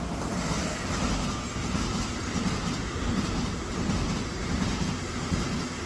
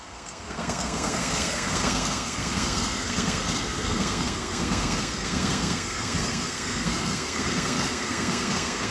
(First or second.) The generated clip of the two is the second